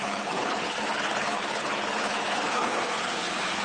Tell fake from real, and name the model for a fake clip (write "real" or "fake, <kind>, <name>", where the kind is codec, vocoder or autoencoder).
fake, codec, HILCodec